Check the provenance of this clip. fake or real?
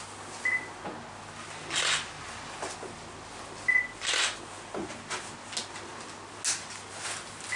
real